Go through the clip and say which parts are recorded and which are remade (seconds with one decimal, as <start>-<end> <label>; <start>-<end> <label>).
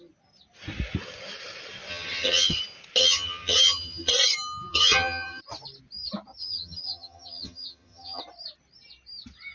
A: 0.0-1.9 recorded; 1.9-2.6 remade; 2.6-3.0 recorded; 3.0-4.1 remade; 4.1-4.7 recorded; 4.7-5.4 remade; 5.4-6.4 recorded; 6.4-8.2 remade; 8.2-9.5 recorded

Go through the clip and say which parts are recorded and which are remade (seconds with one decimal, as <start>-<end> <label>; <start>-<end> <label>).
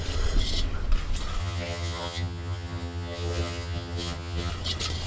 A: 0.0-1.4 recorded; 1.4-4.5 remade; 4.5-5.1 recorded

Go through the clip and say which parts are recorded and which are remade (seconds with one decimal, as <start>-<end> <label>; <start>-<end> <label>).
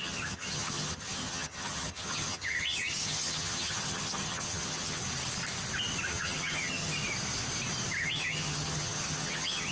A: 0.0-5.0 remade; 5.0-6.1 recorded; 6.1-7.0 remade; 7.0-8.0 recorded; 8.0-9.7 remade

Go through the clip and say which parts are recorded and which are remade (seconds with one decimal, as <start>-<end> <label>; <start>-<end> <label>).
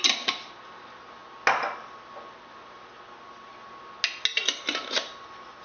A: 0.0-5.6 recorded